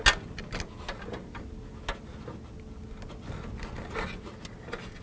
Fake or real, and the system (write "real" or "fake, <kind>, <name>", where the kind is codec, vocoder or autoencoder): real